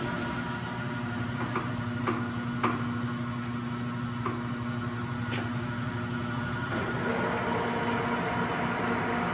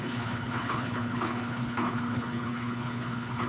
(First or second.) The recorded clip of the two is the first